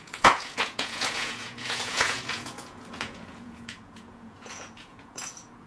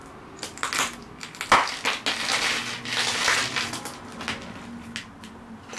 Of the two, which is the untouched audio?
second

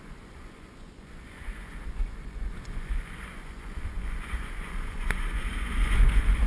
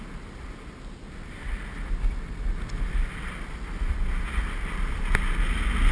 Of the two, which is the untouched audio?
second